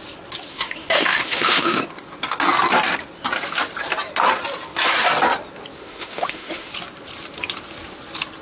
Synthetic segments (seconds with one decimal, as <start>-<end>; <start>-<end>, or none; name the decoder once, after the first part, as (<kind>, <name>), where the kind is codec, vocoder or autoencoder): 0.5-1.8 (autoencoder, DAC-VAE); 5.8-6.7